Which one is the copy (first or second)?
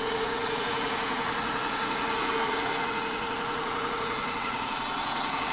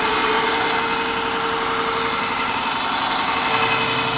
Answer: first